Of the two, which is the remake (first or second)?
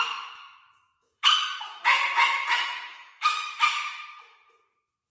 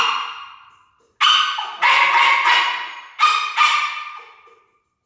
first